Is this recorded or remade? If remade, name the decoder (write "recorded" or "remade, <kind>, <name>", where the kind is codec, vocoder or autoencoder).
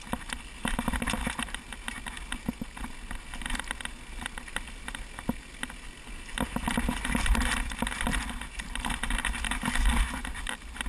recorded